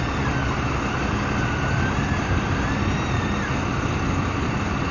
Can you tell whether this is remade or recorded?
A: recorded